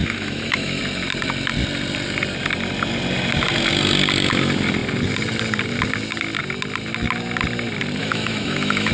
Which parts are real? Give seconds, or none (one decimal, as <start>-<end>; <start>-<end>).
0.8-8.0